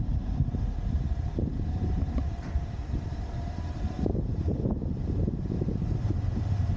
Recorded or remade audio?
remade